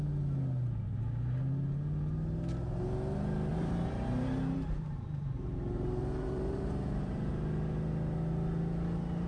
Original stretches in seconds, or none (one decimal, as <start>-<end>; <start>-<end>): 0.0-3.5; 7.3-9.3